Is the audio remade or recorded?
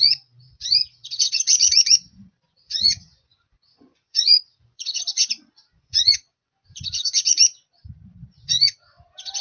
remade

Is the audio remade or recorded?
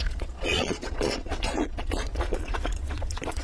remade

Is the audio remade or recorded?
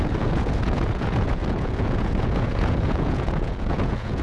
remade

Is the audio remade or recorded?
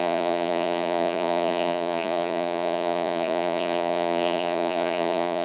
remade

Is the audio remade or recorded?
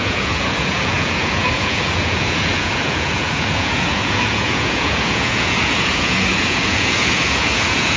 remade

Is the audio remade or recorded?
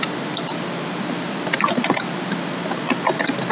recorded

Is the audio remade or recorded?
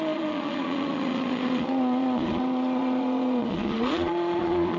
remade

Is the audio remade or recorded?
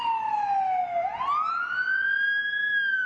recorded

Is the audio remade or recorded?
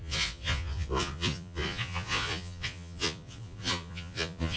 remade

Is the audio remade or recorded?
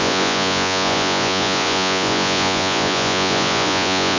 remade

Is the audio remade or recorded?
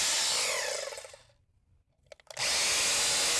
recorded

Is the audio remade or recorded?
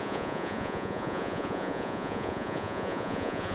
remade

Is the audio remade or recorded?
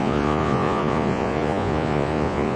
remade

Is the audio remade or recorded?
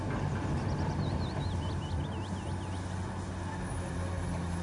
recorded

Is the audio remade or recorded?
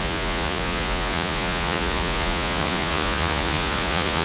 remade